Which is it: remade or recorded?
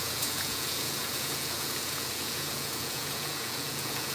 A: remade